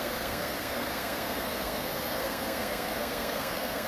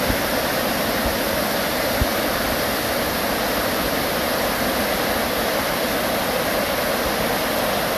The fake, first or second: first